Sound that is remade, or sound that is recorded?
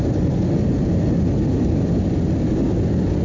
recorded